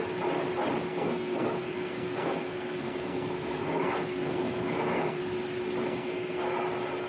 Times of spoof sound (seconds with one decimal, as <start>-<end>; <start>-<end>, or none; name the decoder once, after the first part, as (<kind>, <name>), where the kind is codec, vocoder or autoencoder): 0.9-5.2 (codec, SNAC); 5.8-6.4